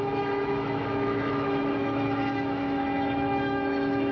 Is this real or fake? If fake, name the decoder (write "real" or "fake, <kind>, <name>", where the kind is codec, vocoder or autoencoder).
fake, autoencoder, DAC-VAE